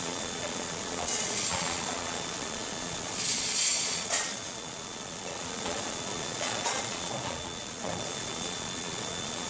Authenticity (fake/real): fake